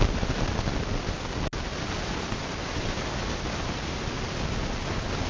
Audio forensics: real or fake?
real